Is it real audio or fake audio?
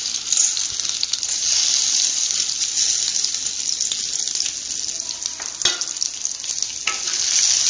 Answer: real